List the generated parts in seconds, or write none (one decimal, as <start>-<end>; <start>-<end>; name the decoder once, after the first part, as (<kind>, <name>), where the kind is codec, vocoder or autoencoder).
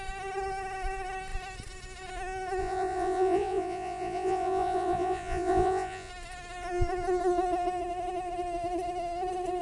2.6-6.1 (vocoder, Vocos)